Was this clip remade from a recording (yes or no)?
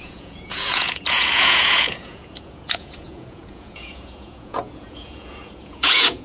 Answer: yes